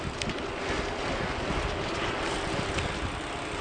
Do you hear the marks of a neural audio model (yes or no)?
no